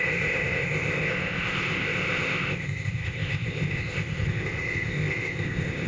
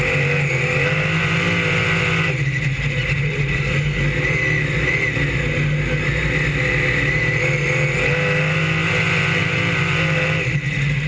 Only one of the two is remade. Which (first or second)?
first